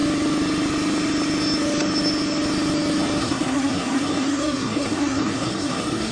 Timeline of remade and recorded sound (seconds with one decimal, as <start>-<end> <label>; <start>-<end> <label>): 0.0-3.2 recorded; 3.2-6.1 remade